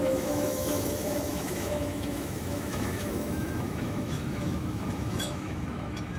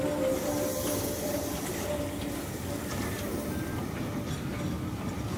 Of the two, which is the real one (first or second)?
second